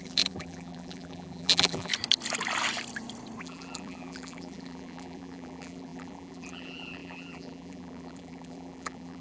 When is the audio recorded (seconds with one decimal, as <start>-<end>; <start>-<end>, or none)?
1.9-3.4